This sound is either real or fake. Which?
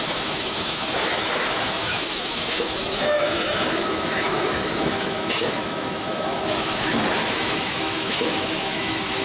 fake